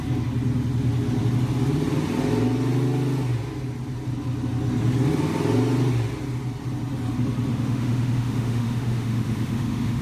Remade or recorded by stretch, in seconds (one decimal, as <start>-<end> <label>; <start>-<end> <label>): 0.0-7.5 recorded; 7.5-10.0 remade